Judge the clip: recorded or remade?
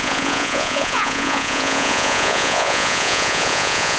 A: remade